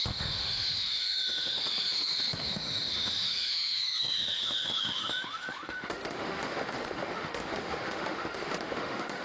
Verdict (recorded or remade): remade